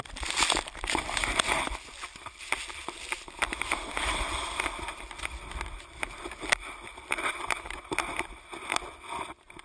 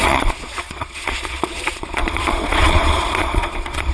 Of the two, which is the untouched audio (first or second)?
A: first